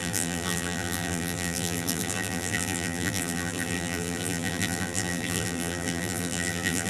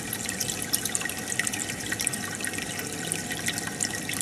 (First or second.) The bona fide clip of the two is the second